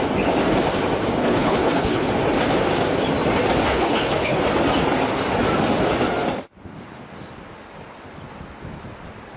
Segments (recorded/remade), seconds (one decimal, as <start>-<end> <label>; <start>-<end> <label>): 0.0-1.2 recorded; 1.2-2.1 remade; 2.1-3.7 recorded; 3.7-4.4 remade; 4.4-9.4 recorded

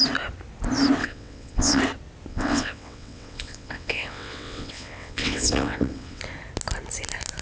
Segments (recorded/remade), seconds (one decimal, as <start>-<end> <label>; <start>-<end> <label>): 0.0-1.0 recorded; 1.0-1.8 remade; 1.8-2.3 recorded; 2.3-6.2 remade; 6.2-7.4 recorded

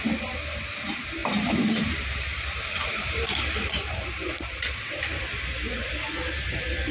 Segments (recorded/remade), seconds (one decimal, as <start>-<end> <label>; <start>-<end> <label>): 0.0-1.2 recorded; 1.2-5.0 remade; 5.0-6.9 recorded

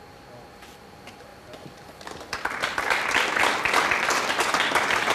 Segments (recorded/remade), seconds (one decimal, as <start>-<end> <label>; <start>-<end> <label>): 0.0-5.1 recorded

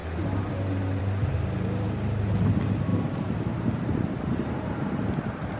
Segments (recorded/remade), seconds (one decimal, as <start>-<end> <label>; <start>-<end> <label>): 0.0-5.6 recorded